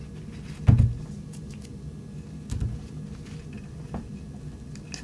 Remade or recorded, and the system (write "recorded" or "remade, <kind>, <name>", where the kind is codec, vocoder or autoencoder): recorded